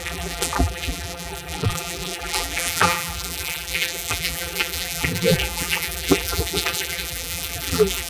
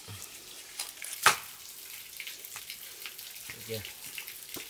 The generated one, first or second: first